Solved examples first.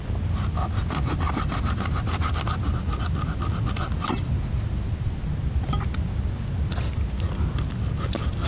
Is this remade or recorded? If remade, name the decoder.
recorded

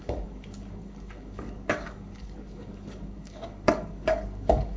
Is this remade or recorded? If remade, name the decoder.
remade, codec, DAC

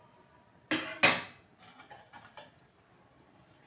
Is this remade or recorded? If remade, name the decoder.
recorded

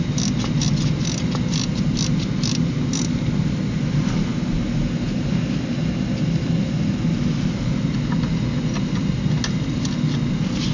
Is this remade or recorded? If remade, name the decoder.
recorded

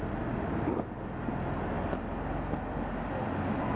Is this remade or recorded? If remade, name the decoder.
recorded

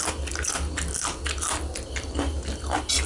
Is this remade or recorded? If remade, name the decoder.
recorded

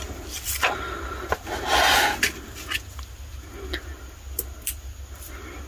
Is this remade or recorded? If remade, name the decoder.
recorded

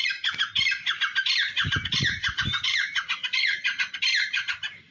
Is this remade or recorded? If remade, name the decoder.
recorded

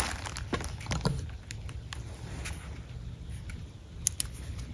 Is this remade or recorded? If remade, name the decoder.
recorded